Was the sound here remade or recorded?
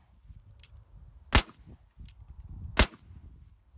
recorded